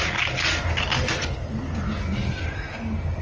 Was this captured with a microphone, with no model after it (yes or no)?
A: yes